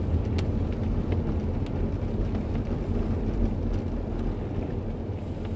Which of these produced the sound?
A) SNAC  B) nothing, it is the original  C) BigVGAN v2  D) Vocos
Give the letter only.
B